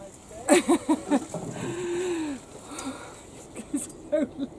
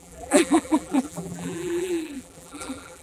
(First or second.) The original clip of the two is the first